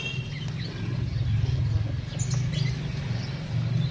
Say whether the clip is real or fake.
real